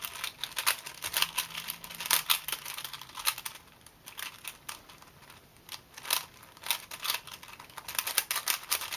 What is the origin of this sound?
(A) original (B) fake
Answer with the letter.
A